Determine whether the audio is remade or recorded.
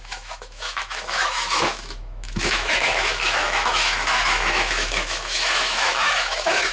remade